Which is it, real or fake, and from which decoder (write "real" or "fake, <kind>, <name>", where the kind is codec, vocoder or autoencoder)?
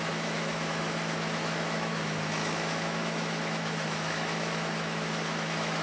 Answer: fake, autoencoder, DAC-VAE